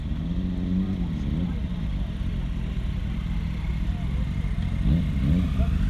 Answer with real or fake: real